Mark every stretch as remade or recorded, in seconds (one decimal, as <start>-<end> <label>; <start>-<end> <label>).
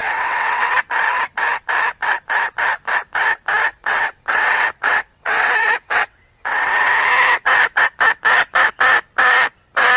0.0-0.7 remade; 0.7-3.7 recorded; 3.7-6.9 remade; 6.9-10.0 recorded